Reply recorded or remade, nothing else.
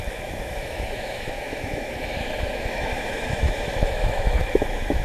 remade